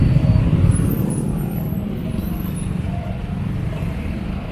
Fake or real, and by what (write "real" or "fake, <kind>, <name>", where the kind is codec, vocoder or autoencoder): fake, vocoder, BigVGAN v2